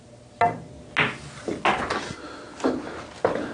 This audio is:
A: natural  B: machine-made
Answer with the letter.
A